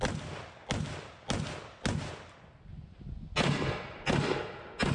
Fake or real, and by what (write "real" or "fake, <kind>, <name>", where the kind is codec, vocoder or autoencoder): real